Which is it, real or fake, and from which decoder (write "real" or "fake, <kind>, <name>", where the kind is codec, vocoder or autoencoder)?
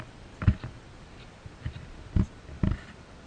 fake, vocoder, BigVGAN v2